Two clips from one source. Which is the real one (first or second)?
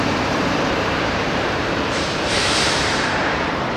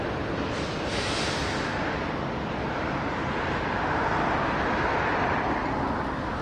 second